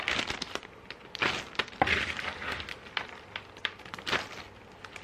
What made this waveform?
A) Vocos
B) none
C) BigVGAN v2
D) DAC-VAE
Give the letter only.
B